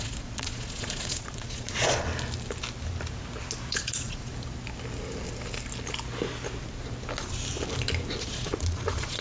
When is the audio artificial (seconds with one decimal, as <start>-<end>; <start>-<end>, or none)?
0.0-2.1; 3.7-4.3; 8.2-9.2